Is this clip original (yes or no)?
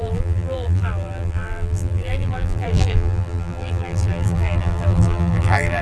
no